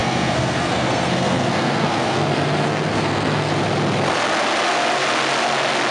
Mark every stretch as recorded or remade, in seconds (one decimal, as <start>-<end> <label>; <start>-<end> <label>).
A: 0.0-3.5 remade; 3.5-5.9 recorded